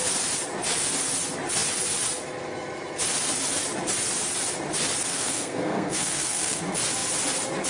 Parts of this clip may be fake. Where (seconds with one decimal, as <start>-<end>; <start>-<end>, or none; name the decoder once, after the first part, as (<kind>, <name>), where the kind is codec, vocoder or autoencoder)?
5.1-6.6 (codec, SNAC)